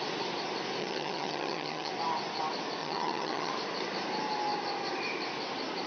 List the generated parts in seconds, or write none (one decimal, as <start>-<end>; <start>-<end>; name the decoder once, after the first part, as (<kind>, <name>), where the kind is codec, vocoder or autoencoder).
0.8-1.9 (vocoder, HiFi-GAN); 2.8-3.5